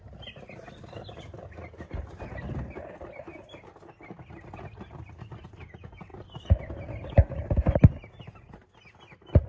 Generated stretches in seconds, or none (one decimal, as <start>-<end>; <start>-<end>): none